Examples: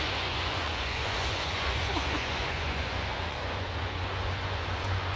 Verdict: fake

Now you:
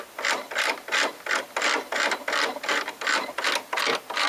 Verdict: real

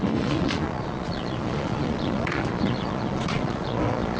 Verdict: fake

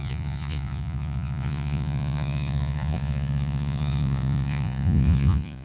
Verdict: fake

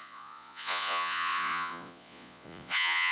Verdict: fake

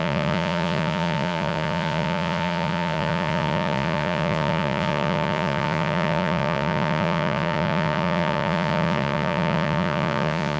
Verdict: fake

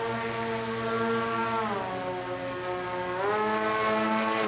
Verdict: real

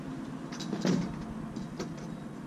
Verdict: real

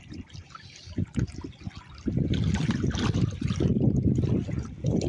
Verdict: real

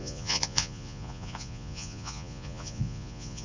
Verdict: fake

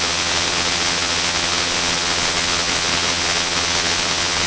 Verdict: fake